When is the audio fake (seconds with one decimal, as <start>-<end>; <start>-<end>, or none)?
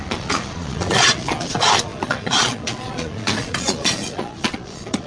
0.0-5.1